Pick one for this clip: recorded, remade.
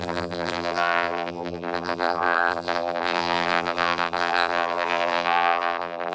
remade